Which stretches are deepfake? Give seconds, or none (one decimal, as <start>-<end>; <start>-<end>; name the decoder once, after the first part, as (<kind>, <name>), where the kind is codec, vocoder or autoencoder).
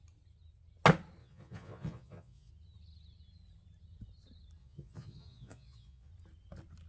1.2-2.5 (vocoder, Vocos); 4.6-6.1